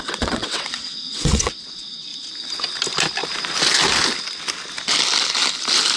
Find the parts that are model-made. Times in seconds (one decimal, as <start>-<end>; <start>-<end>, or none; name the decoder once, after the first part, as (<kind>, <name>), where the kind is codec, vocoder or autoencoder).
0.0-2.1 (vocoder, WaveNeXt)